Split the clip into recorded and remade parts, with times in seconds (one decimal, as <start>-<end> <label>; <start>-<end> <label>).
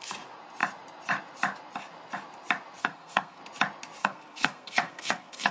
0.0-2.8 recorded; 2.8-3.4 remade; 3.4-4.0 recorded; 4.0-5.5 remade